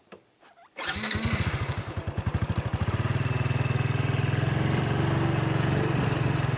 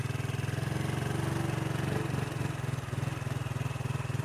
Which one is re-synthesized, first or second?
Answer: first